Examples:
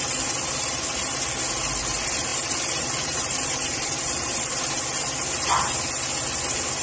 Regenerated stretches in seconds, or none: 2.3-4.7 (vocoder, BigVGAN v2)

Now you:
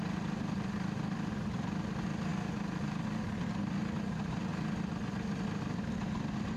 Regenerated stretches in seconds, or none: none

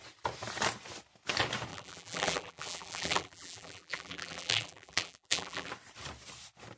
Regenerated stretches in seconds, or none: 1.7-5.7 (vocoder, BigVGAN v2)

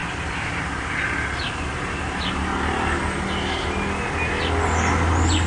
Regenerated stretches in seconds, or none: 1.6-2.5 (vocoder, BigVGAN v2)